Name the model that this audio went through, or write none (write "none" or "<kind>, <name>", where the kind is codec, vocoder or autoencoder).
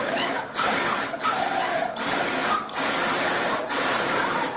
vocoder, BigVGAN v2